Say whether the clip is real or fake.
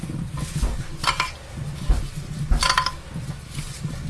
real